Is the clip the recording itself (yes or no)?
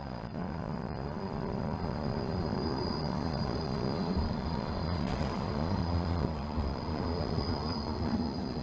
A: no